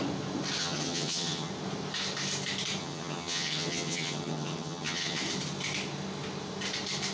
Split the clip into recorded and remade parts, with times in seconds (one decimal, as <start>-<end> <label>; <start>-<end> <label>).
0.0-0.6 recorded; 0.6-1.5 remade; 1.5-2.8 recorded; 2.8-5.2 remade; 5.2-7.1 recorded